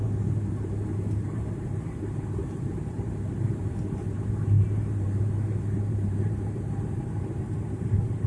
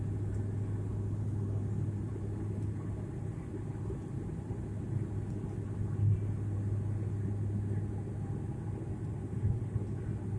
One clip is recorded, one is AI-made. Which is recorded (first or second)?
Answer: second